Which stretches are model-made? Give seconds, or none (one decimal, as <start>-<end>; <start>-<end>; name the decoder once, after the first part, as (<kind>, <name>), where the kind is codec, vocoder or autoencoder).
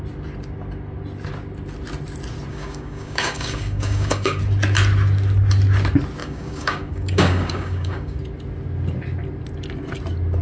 2.5-4.4 (codec, DAC); 6.2-8.2